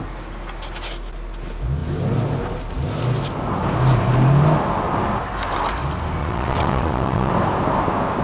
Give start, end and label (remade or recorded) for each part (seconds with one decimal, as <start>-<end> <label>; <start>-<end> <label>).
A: 0.0-6.2 recorded; 6.2-7.3 remade; 7.3-8.2 recorded